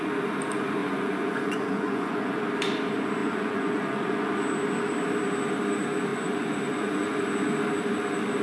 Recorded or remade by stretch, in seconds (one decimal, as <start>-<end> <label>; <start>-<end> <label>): 0.0-0.8 recorded; 0.8-2.4 remade; 2.4-3.2 recorded; 3.2-4.3 remade; 4.3-6.1 recorded; 6.1-7.2 remade; 7.2-8.4 recorded